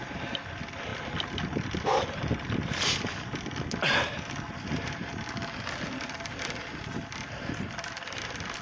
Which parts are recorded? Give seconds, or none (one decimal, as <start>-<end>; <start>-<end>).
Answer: 0.0-8.6